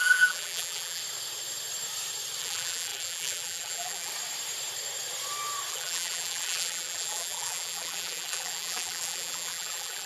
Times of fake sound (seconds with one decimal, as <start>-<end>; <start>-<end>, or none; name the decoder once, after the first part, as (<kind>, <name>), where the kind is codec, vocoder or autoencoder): 0.0-1.0 (vocoder, BigVGAN v2); 2.4-4.1; 5.7-10.1